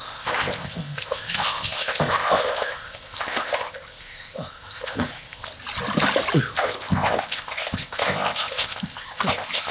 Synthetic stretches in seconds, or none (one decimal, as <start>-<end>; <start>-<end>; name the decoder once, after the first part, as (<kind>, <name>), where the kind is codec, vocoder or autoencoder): 0.0-5.5 (codec, ZipCodec); 6.4-9.7